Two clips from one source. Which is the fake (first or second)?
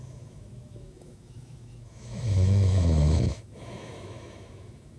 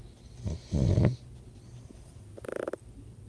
first